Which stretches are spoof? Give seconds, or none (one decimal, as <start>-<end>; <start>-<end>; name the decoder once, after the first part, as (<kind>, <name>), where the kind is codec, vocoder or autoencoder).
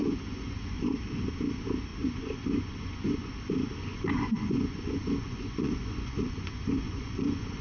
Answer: 0.0-0.9 (vocoder, Vocos); 1.9-3.3; 3.8-7.6